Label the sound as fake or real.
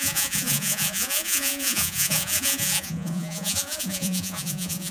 fake